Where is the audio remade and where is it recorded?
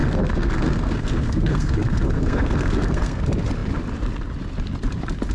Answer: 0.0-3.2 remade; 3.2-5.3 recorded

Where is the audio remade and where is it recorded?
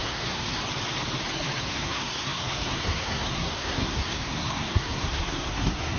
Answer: 0.0-0.6 remade; 0.6-1.6 recorded; 1.6-6.0 remade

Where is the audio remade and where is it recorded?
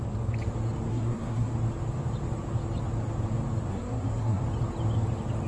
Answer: 0.0-0.9 recorded; 0.9-1.5 remade; 1.5-3.7 recorded; 3.7-4.4 remade; 4.4-5.5 recorded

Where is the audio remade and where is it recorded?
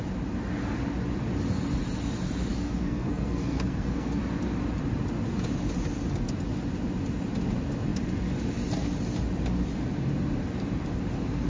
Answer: 0.0-2.5 recorded; 2.5-4.2 remade; 4.2-11.5 recorded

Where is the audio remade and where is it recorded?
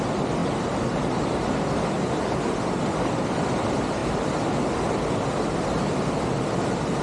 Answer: 0.0-7.0 recorded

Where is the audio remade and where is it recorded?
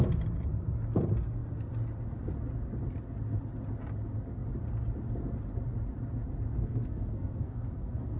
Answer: 0.0-6.6 recorded; 6.6-8.2 remade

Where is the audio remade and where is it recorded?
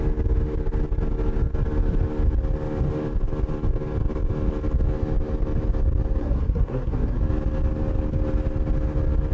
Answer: 0.0-6.2 recorded; 6.2-7.2 remade; 7.2-9.3 recorded